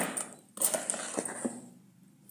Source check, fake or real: real